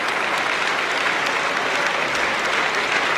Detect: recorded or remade recorded